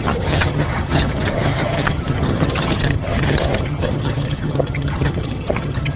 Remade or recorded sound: remade